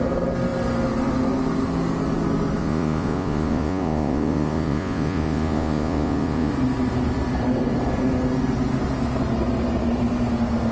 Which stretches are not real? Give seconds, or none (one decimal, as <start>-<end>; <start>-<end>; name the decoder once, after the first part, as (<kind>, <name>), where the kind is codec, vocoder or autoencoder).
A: 2.6-6.5 (vocoder, Vocos)